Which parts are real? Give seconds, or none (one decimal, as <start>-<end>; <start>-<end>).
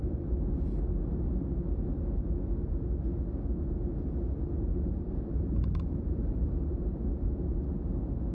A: 0.0-4.7; 7.0-8.3